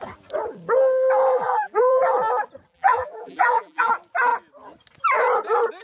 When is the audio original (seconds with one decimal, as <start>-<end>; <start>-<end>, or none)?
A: 0.0-1.3; 2.0-2.7; 3.9-5.8